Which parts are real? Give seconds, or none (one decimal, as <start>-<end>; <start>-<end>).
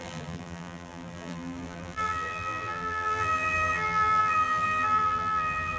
none